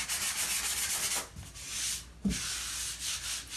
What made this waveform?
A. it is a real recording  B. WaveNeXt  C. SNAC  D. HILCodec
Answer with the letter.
A